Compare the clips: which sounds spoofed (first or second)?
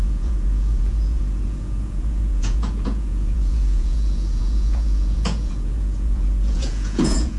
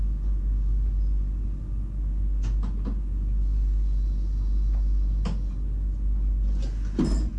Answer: first